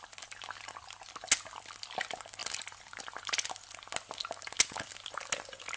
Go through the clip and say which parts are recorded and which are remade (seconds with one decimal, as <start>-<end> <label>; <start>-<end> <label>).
0.0-5.8 recorded